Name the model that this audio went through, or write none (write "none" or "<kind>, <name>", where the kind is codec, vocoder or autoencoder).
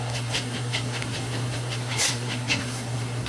codec, SNAC